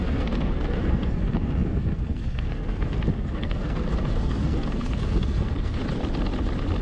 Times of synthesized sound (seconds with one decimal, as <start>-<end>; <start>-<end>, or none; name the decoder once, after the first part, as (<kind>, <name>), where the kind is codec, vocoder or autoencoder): 0.0-5.8 (codec, SNAC)